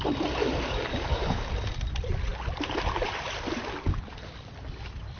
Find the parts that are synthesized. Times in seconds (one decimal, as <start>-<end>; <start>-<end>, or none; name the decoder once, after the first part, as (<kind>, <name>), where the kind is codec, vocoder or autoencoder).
0.4-1.5 (codec, DAC)